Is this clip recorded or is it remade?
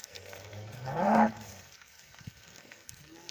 remade